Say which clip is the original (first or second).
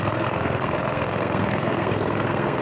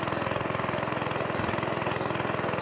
second